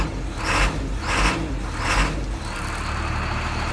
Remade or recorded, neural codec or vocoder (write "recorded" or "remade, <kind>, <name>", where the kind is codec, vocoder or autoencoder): recorded